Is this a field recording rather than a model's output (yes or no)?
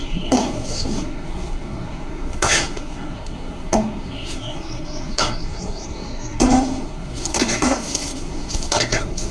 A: no